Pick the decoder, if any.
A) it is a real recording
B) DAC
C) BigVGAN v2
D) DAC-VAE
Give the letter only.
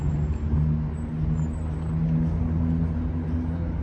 A